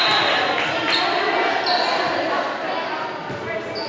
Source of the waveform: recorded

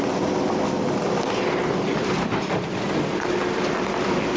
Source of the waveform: recorded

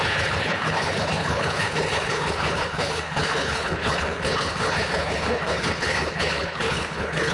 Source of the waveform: remade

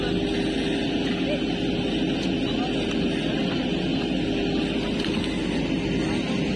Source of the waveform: recorded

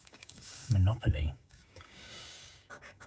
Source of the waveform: remade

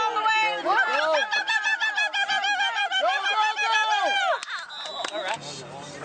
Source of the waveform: recorded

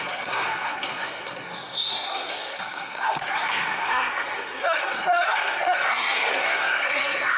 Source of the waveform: remade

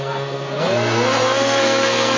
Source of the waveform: remade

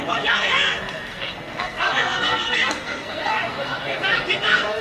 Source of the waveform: remade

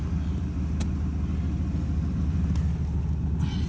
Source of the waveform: recorded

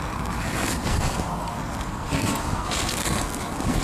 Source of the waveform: remade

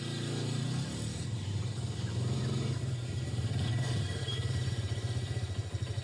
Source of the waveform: remade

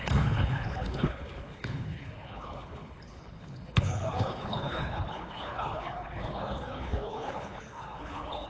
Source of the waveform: remade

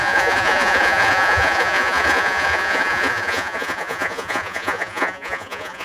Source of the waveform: remade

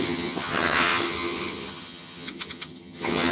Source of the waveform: remade